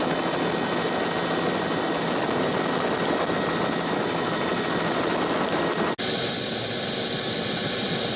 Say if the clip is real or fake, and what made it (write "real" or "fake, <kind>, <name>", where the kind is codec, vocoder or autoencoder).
real